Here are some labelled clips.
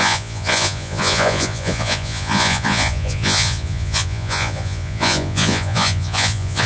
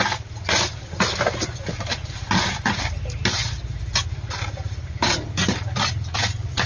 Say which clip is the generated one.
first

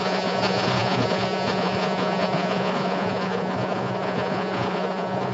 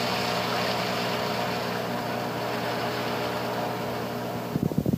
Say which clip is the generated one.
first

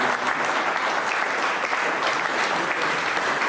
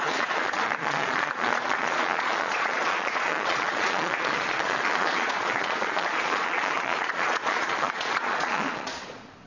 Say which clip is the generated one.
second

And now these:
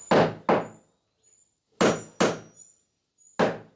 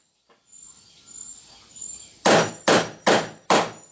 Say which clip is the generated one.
second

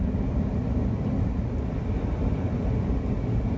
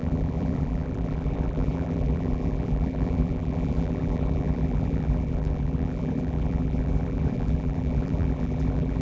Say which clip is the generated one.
second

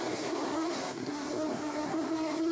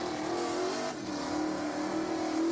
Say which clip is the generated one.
first